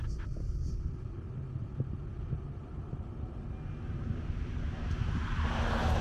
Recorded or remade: recorded